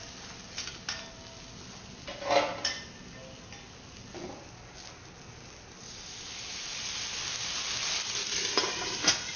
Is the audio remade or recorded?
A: recorded